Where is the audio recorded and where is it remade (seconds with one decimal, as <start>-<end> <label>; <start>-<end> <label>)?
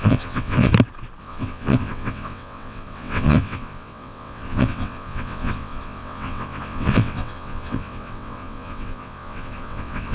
0.0-0.7 remade; 0.7-1.2 recorded; 1.2-10.1 remade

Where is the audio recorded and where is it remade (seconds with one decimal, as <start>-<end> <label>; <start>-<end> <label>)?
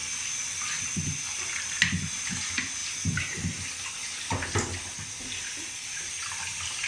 0.0-6.9 recorded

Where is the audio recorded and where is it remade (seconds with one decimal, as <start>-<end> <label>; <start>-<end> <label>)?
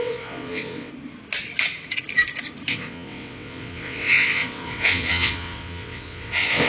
0.0-0.9 remade; 0.9-2.7 recorded; 2.7-6.7 remade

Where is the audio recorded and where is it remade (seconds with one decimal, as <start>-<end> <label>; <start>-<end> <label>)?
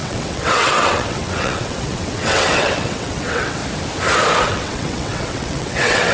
0.0-3.6 remade; 3.6-4.4 recorded; 4.4-6.1 remade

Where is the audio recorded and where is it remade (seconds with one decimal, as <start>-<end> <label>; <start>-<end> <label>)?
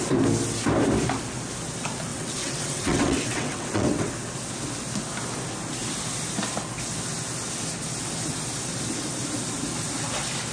0.0-2.1 recorded; 2.1-4.1 remade; 4.1-10.5 recorded